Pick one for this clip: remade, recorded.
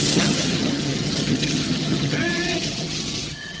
remade